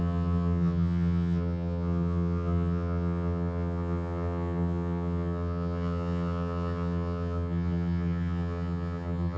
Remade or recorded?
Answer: remade